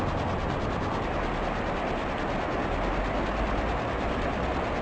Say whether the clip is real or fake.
real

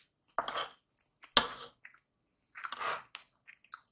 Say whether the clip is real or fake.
real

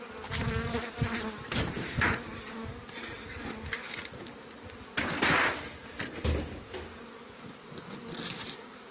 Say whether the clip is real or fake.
real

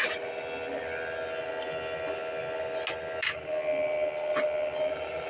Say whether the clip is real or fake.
real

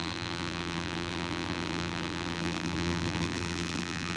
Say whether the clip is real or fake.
fake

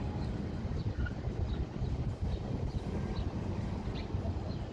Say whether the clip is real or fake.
real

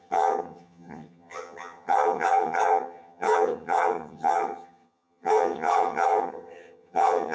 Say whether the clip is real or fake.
fake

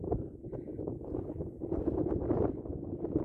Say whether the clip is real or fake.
fake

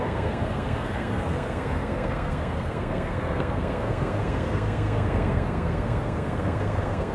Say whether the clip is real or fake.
fake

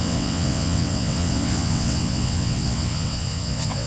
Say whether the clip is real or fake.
fake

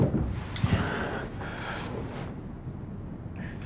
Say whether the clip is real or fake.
real